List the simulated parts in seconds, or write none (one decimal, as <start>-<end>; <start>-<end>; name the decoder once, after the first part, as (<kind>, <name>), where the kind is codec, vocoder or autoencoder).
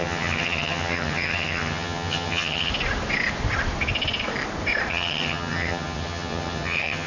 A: 0.0-2.7 (vocoder, HiFi-GAN); 4.9-7.1